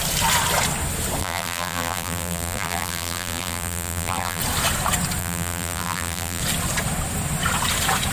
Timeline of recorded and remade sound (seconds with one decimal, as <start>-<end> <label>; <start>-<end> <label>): 0.0-1.2 recorded; 1.2-4.4 remade; 4.4-5.2 recorded; 5.2-6.4 remade; 6.4-8.1 recorded